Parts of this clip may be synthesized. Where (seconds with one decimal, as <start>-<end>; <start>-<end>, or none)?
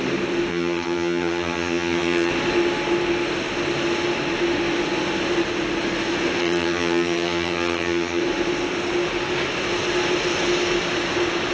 0.5-2.3; 6.4-8.2